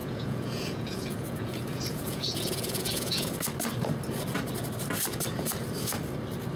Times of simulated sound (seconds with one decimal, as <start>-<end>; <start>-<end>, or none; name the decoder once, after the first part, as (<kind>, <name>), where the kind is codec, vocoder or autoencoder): 0.0-3.3 (vocoder, Vocos)